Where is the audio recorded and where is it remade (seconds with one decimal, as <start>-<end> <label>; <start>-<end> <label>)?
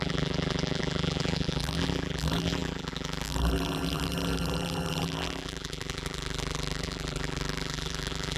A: 0.0-8.4 remade